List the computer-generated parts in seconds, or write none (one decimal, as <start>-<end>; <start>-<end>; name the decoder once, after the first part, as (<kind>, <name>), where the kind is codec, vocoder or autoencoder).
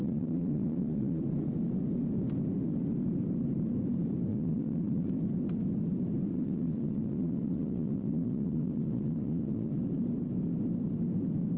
0.0-1.2 (vocoder, Vocos); 4.3-5.1; 6.3-9.8